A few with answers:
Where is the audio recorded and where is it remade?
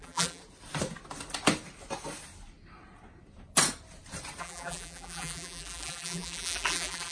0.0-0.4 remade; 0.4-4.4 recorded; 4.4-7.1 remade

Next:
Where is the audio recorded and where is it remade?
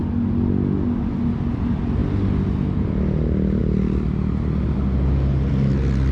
0.0-6.1 recorded